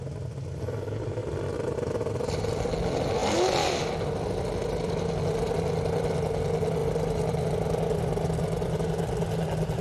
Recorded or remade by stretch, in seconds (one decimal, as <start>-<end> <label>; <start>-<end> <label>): 0.0-9.8 recorded